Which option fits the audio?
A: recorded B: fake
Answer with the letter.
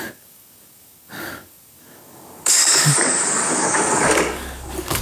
B